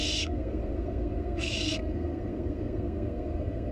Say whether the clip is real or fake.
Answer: fake